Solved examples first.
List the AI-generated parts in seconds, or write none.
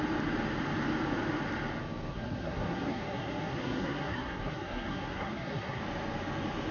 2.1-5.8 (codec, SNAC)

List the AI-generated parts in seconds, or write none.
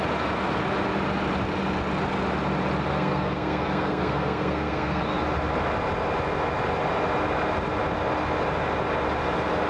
2.9-5.0 (codec, SNAC)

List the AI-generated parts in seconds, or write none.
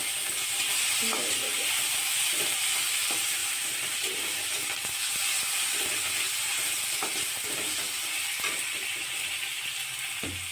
none